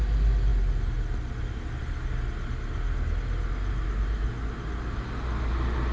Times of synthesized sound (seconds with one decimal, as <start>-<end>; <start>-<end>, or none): none